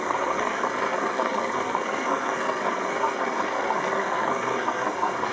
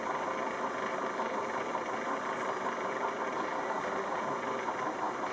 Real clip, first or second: second